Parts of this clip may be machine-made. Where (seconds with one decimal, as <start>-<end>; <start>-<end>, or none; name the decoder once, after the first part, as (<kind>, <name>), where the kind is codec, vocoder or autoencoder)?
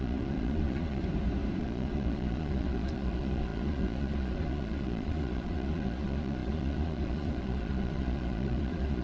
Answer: 0.0-1.0 (vocoder, Vocos); 1.6-9.0